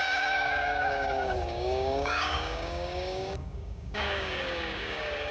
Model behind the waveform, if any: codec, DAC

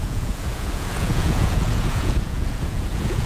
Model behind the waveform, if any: vocoder, Vocos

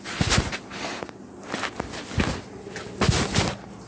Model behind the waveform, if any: none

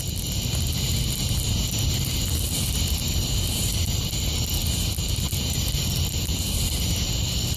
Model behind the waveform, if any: none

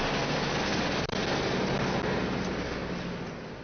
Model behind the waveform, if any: none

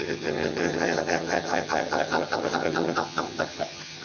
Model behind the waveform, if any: vocoder, HiFi-GAN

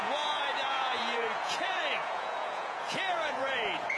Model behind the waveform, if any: vocoder, Vocos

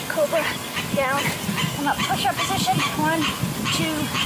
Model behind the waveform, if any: none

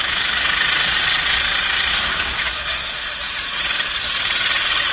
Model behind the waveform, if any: none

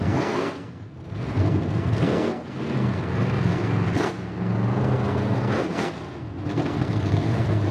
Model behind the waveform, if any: codec, SNAC